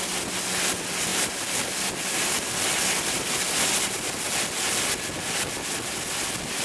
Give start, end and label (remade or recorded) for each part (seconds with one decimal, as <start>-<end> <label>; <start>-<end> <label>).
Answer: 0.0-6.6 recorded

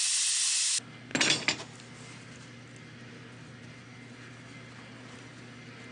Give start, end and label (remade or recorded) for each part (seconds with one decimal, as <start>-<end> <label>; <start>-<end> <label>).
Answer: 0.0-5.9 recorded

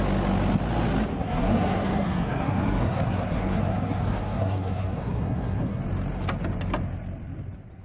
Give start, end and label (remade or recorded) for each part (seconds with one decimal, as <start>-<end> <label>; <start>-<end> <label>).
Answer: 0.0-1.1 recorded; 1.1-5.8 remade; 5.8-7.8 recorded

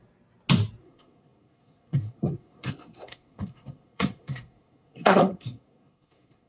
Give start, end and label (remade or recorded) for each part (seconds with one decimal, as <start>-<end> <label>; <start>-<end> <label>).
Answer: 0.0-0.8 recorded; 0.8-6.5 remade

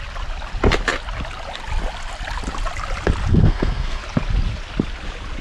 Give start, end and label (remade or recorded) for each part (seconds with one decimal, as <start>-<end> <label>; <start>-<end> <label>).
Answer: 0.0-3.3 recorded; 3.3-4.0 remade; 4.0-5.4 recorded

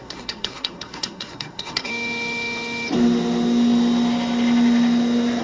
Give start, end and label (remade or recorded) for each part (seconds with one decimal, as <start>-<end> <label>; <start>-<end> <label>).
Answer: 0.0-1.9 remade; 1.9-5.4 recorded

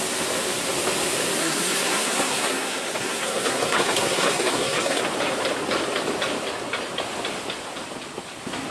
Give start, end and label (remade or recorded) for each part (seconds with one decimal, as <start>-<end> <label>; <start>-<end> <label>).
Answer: 0.0-1.4 recorded; 1.4-5.0 remade; 5.0-8.7 recorded